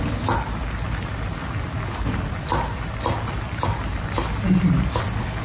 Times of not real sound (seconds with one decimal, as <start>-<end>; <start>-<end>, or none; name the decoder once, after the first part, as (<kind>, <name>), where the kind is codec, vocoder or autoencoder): none